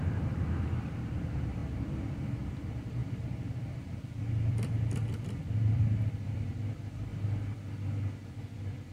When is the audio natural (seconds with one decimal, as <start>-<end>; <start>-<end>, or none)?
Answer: 7.1-8.3

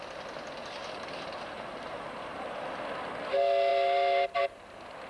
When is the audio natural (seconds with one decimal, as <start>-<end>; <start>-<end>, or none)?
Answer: 0.0-5.1

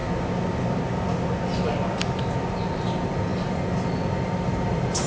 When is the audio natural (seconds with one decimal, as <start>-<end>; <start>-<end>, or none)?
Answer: 0.0-5.1

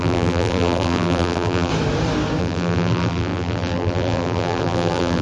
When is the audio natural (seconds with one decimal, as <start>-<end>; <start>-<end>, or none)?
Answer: 1.7-2.4

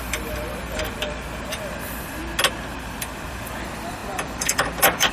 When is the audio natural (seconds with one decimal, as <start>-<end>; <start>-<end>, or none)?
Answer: 2.2-2.7

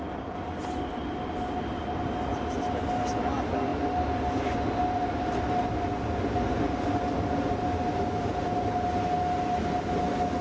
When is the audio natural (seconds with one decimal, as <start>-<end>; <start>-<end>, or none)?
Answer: 0.0-10.4

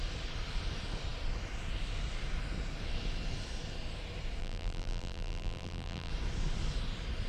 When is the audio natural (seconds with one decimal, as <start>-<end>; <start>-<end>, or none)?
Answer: 0.0-4.4; 6.1-7.3

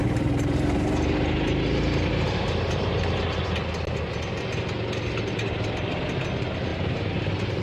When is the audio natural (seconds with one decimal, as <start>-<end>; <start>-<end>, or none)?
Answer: 3.0-6.7